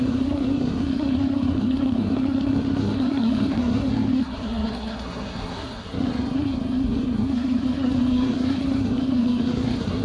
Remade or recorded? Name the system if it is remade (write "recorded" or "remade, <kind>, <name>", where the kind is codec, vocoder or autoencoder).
remade, codec, SNAC